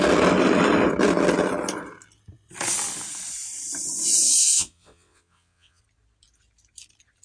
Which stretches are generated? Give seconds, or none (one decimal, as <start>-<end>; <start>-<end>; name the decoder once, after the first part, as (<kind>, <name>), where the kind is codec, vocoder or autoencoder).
4.4-5.8 (vocoder, WaveNeXt)